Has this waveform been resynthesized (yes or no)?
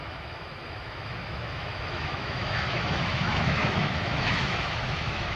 yes